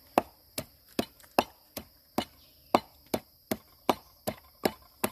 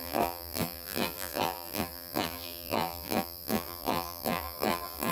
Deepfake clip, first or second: second